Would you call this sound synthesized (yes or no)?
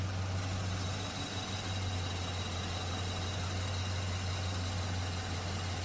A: no